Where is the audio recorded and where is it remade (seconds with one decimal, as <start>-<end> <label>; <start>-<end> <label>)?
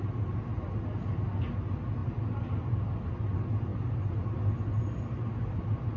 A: 0.0-6.0 recorded